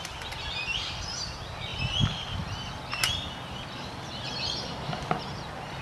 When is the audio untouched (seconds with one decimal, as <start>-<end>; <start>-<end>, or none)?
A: 0.0-5.8